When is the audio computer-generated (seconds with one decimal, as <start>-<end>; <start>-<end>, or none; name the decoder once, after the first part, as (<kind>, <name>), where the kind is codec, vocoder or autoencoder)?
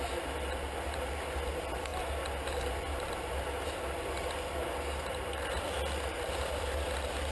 none